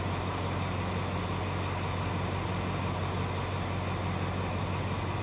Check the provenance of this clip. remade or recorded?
recorded